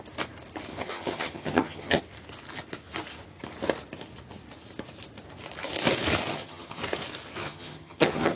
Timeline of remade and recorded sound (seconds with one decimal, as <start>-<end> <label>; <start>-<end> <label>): 0.0-0.7 recorded; 0.7-2.0 remade; 2.0-6.3 recorded; 6.3-6.8 remade; 6.8-7.4 recorded; 7.4-8.4 remade